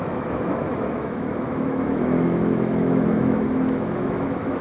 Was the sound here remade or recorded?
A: remade